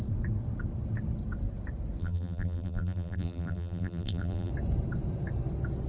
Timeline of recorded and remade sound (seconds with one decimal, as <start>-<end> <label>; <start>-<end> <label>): 0.0-2.0 recorded; 2.0-4.5 remade; 4.5-5.9 recorded